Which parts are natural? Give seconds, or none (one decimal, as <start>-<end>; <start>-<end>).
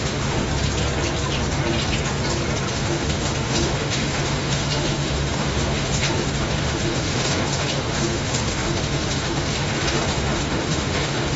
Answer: 0.5-2.7